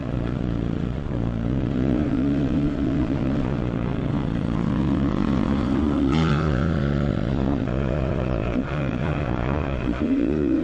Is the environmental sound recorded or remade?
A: remade